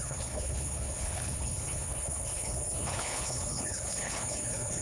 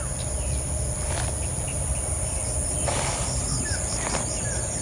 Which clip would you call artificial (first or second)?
first